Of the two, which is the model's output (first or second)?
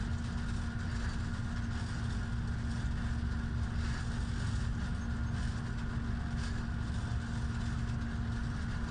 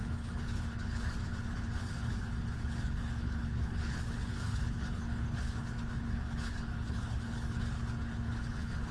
second